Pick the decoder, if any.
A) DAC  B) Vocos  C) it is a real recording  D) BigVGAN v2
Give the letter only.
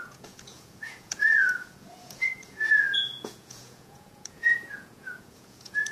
B